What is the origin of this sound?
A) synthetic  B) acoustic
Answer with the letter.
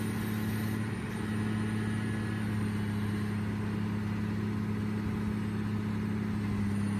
B